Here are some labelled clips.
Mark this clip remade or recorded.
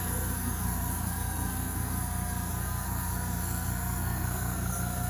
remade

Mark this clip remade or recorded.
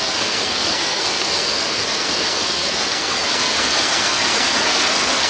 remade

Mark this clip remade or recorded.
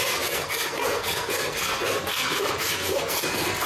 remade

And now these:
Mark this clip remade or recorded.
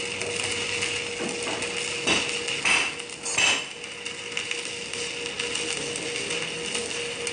recorded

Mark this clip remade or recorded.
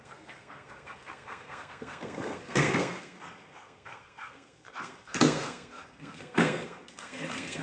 remade